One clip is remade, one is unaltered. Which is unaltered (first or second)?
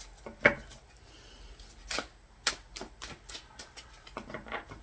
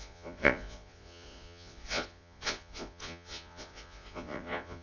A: first